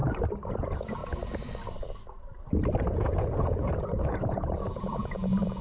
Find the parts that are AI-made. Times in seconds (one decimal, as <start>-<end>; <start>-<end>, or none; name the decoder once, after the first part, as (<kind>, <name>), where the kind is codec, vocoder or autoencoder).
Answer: 0.5-1.0 (vocoder, Vocos); 2.8-5.6